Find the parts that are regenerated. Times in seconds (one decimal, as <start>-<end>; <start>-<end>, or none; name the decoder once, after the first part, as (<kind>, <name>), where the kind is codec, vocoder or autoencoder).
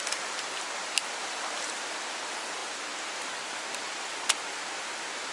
none